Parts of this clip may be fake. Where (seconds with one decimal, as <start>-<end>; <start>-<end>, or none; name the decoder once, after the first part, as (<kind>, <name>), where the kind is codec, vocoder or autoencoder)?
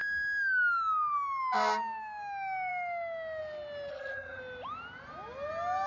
3.9-4.4 (vocoder, HiFi-GAN)